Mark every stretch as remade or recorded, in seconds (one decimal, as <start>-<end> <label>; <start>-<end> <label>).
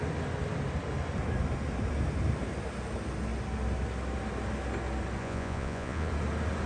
0.0-5.2 recorded; 5.2-6.1 remade; 6.1-6.7 recorded